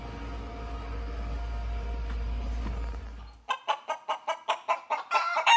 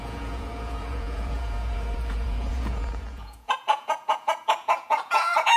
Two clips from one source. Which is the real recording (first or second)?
first